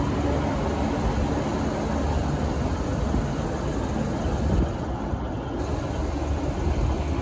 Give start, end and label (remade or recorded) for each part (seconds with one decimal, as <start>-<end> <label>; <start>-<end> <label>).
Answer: 0.0-7.2 recorded